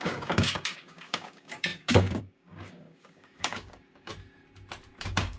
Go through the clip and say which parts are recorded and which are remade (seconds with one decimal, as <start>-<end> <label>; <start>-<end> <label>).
0.0-4.1 remade; 4.1-5.0 recorded; 5.0-5.4 remade